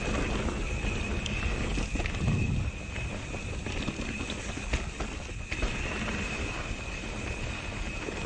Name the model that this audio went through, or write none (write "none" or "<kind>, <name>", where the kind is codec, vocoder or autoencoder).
none